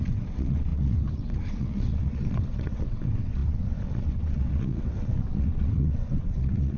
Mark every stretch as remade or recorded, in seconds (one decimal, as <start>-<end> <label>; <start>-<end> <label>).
0.0-6.8 remade